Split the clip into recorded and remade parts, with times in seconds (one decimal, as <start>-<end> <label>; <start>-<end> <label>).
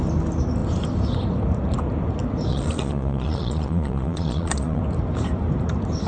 0.0-2.5 recorded; 2.5-4.8 remade; 4.8-6.1 recorded